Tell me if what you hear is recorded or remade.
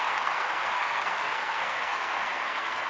remade